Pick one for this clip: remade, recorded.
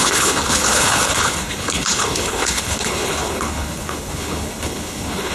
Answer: remade